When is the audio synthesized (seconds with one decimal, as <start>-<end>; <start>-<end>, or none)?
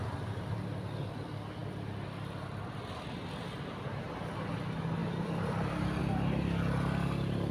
5.0-6.0